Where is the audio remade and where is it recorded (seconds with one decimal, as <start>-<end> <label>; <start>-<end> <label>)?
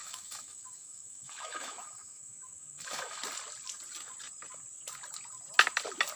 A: 0.0-3.2 remade; 3.2-6.2 recorded